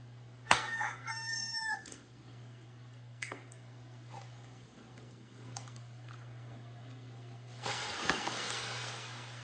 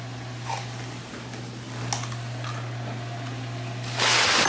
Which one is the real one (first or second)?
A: second